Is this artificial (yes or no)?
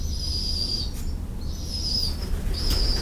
no